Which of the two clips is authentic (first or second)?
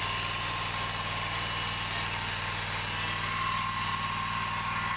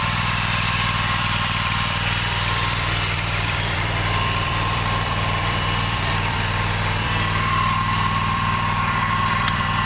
first